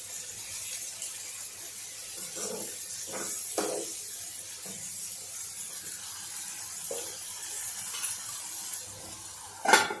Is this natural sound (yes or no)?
yes